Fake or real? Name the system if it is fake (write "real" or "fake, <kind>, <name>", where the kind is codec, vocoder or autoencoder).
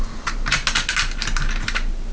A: real